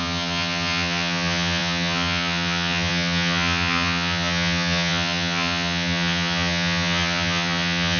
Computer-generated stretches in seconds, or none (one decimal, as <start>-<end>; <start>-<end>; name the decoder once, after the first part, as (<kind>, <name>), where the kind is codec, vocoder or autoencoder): 0.0-8.0 (vocoder, HiFi-GAN)